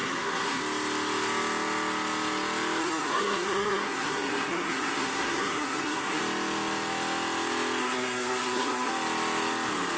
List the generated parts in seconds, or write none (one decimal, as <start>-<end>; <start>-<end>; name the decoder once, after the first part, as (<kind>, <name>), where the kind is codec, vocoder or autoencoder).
0.0-0.6 (codec, SNAC); 2.8-6.2; 7.8-8.9

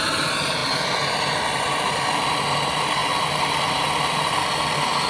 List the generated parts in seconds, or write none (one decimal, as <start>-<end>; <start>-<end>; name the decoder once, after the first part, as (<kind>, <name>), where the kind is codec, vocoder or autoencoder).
none